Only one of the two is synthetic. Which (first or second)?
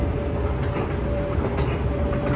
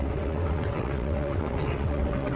second